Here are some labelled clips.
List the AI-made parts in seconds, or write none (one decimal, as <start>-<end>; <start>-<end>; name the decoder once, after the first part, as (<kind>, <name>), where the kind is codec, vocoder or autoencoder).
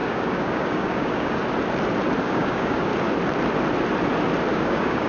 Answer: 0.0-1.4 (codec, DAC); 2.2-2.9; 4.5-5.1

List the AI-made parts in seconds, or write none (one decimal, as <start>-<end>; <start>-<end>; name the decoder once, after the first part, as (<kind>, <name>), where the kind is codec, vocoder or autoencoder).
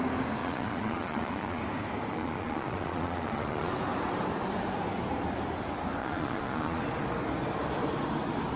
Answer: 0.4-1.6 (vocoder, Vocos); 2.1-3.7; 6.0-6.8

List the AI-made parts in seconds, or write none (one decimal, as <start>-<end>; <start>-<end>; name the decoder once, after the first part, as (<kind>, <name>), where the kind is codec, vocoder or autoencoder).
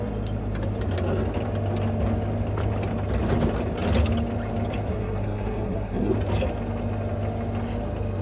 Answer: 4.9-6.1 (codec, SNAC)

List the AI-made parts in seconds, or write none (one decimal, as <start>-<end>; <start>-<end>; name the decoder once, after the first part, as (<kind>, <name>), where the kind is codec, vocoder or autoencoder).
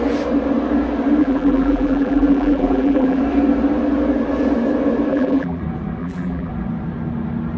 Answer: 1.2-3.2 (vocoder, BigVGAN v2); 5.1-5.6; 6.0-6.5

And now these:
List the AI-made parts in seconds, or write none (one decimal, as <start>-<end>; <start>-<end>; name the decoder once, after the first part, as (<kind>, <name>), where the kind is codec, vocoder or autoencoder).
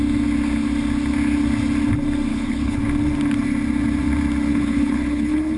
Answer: 2.3-2.8 (codec, HILCodec); 4.5-5.6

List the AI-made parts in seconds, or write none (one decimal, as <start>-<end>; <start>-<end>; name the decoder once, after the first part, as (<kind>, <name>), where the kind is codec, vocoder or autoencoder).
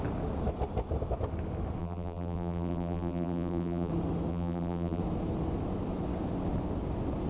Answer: 1.8-3.9 (vocoder, BigVGAN v2); 4.3-5.0